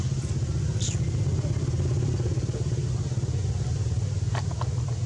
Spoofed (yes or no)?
no